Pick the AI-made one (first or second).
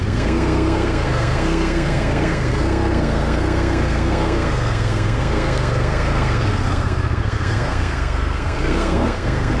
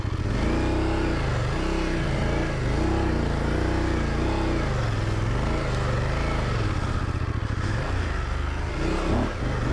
first